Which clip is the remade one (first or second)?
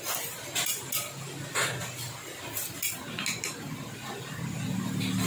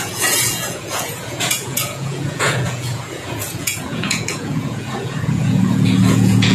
second